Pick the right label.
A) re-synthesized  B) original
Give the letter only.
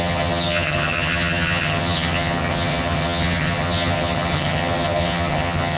A